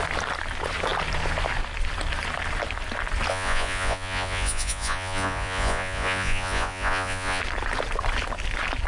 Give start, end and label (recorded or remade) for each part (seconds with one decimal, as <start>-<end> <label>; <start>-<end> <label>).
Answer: 0.0-3.3 recorded; 3.3-7.4 remade; 7.4-8.9 recorded

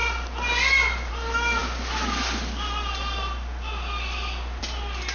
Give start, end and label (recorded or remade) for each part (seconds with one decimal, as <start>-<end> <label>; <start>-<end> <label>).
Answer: 0.0-5.1 recorded

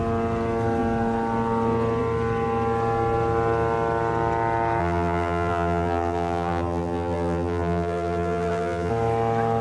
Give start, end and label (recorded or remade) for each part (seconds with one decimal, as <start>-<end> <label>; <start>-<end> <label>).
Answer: 0.0-4.8 recorded; 4.8-8.9 remade; 8.9-9.6 recorded

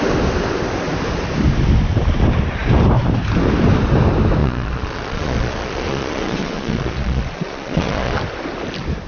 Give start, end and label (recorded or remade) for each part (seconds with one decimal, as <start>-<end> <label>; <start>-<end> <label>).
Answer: 0.0-4.4 recorded; 4.4-8.2 remade; 8.2-9.1 recorded

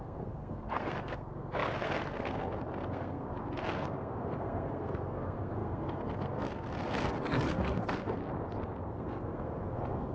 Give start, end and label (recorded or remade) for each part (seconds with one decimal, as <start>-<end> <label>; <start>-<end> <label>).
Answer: 0.0-8.2 remade; 8.2-8.9 recorded; 8.9-10.1 remade